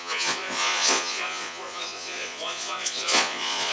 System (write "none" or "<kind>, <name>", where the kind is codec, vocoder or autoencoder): vocoder, Vocos